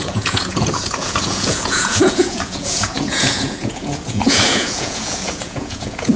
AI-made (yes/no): yes